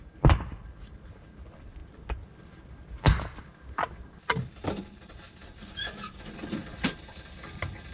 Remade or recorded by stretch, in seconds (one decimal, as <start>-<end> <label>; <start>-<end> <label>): 0.0-7.9 recorded